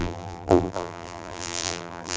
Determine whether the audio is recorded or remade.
remade